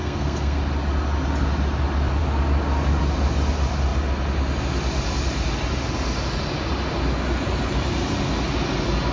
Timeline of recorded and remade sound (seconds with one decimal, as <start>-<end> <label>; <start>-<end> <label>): 0.0-0.6 remade; 0.6-9.1 recorded